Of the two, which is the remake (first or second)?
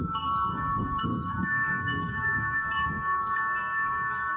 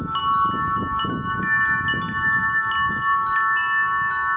first